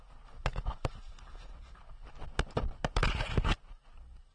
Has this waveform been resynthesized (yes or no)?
no